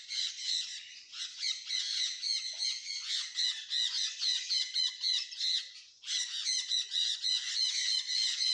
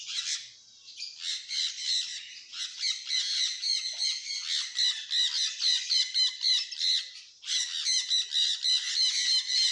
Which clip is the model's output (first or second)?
first